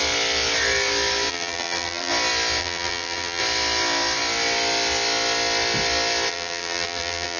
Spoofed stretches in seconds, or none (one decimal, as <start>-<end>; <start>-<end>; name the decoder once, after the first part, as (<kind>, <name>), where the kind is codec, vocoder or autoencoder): 1.3-2.1 (vocoder, BigVGAN v2); 2.6-3.4; 6.3-7.4